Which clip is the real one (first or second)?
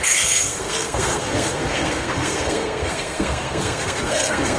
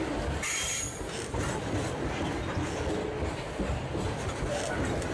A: second